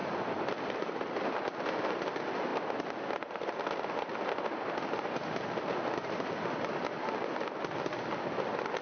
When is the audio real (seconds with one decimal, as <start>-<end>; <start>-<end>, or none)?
0.0-8.8